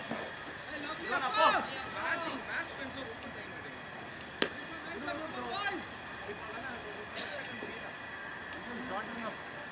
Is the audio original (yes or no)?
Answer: yes